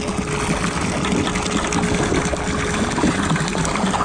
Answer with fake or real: real